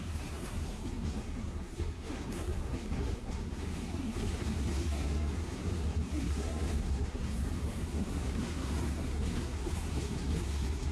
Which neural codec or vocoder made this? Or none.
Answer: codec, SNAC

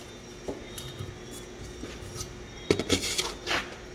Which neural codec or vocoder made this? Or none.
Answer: none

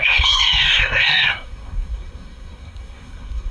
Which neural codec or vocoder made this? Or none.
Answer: codec, SNAC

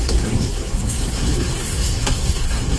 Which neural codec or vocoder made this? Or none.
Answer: codec, SNAC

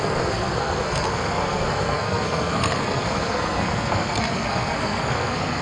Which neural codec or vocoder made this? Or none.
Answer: codec, SNAC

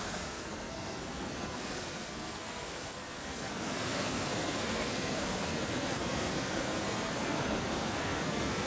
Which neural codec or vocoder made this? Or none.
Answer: codec, SNAC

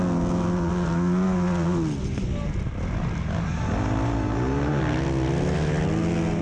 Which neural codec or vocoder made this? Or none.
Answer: none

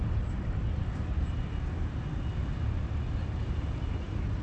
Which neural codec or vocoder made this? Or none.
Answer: none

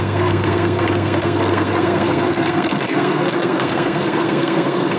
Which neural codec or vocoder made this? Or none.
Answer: codec, SNAC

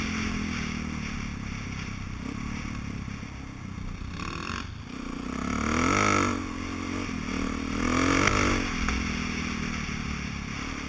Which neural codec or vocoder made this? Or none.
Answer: none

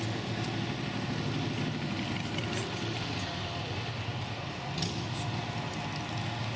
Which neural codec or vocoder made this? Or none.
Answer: none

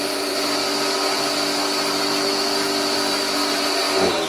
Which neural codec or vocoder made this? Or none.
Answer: none